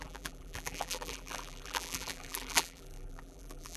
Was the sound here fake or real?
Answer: fake